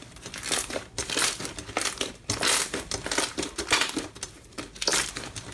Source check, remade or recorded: remade